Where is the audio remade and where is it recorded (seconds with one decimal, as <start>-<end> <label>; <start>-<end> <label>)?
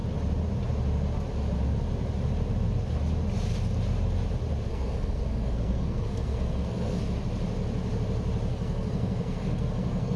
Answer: 0.0-4.7 recorded; 4.7-7.0 remade; 7.0-8.5 recorded; 8.5-10.2 remade